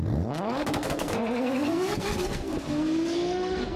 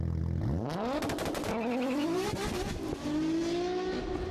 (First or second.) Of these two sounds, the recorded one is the second